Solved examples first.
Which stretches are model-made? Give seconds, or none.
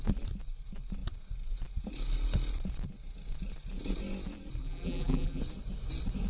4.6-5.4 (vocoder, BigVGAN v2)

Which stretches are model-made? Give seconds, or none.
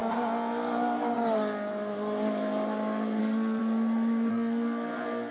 3.2-3.6 (codec, SNAC); 4.3-5.3